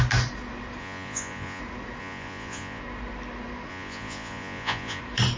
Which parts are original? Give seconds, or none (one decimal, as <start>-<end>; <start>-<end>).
0.0-0.8; 1.6-2.0; 2.8-3.7; 5.0-5.4

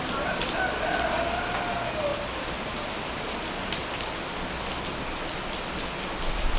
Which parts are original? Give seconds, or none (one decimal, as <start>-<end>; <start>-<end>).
0.0-6.6

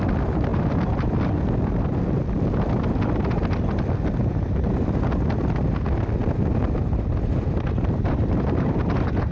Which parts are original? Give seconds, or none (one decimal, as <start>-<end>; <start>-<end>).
0.0-6.2; 8.7-9.3

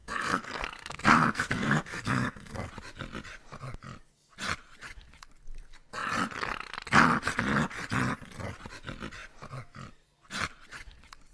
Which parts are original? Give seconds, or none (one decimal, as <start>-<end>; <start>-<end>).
2.7-11.3